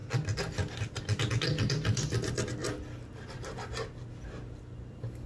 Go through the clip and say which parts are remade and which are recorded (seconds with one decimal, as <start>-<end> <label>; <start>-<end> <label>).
0.0-5.3 recorded